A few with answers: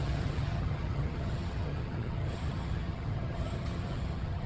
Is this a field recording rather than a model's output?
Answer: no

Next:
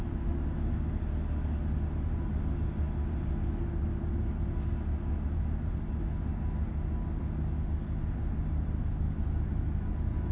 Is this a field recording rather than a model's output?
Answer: yes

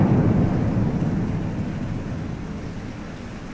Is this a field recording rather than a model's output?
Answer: yes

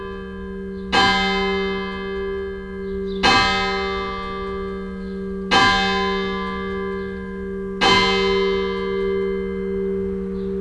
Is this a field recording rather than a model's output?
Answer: yes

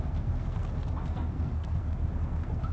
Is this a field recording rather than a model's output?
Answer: no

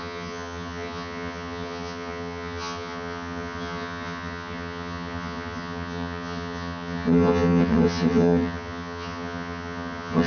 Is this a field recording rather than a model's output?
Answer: no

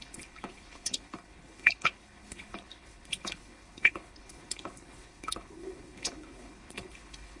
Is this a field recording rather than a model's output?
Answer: no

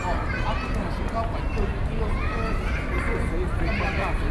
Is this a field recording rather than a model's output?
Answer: yes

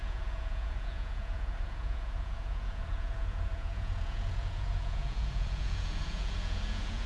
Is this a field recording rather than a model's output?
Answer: no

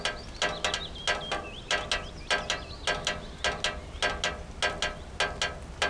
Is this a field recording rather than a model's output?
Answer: yes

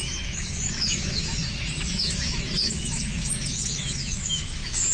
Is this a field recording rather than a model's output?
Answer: no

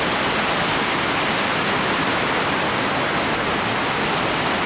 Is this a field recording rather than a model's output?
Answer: yes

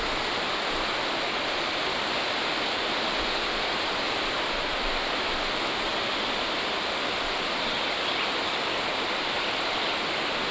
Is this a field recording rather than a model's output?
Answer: yes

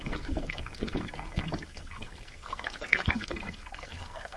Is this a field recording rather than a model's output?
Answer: no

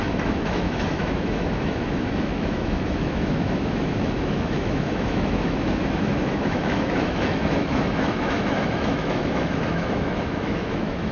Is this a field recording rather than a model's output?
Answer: no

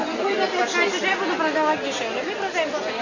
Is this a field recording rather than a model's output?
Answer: yes